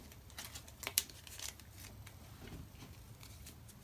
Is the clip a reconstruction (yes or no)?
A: no